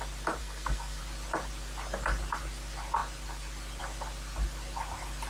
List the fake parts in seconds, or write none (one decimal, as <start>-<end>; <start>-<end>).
0.4-1.0